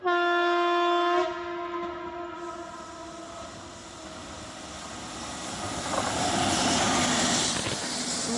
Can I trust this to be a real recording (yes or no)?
yes